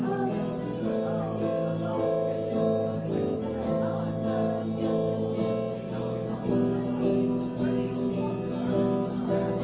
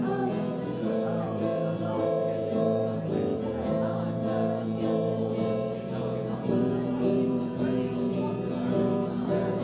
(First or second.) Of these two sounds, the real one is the first